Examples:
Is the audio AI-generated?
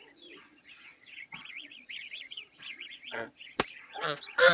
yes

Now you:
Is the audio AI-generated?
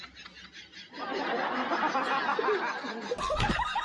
no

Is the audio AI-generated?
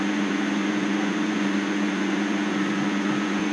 yes